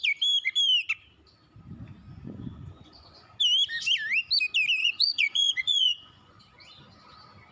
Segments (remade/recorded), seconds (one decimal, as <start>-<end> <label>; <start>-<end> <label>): 0.0-2.1 recorded; 2.1-3.3 remade; 3.3-4.8 recorded; 4.8-6.4 remade; 6.4-7.5 recorded